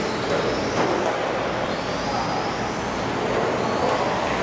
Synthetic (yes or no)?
no